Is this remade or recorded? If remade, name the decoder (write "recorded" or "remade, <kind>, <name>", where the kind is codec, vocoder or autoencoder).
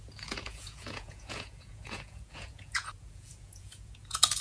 remade, vocoder, Vocos